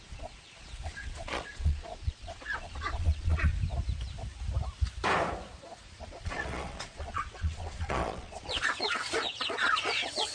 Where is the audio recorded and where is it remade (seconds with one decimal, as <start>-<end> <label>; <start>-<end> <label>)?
0.0-3.5 remade; 3.5-6.0 recorded; 6.0-10.3 remade